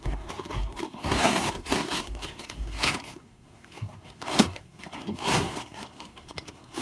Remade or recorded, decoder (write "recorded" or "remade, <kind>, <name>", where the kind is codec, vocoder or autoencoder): remade, codec, SNAC